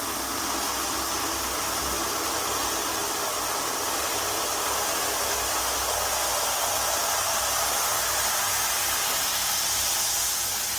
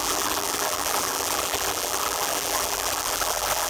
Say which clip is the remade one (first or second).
second